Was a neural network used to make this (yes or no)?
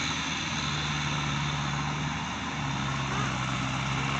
no